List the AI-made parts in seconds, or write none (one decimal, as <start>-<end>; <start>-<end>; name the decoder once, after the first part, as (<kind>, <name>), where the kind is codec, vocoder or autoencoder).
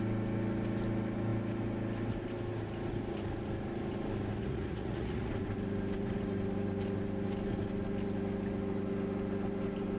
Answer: 4.4-5.3 (vocoder, Vocos)